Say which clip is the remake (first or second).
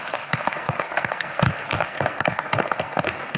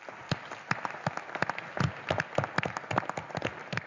first